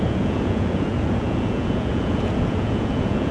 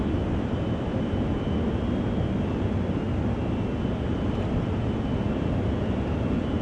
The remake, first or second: first